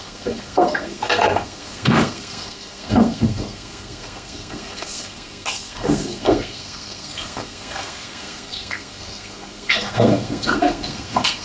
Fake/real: fake